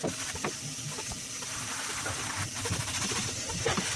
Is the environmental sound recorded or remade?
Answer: recorded